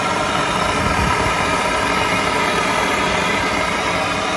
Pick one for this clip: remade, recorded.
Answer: recorded